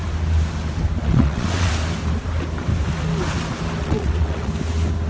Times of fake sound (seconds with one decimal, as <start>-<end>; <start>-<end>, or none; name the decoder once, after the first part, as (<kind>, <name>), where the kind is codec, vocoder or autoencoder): 1.0-1.7 (vocoder, WaveNeXt); 3.8-4.5